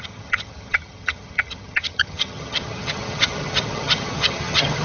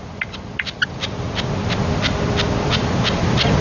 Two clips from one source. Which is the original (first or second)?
second